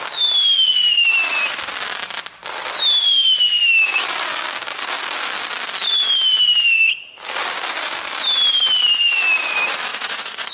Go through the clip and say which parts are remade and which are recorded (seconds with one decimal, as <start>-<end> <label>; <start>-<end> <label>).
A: 0.0-9.9 recorded; 9.9-10.5 remade